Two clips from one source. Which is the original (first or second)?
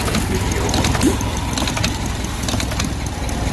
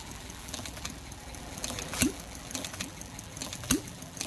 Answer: first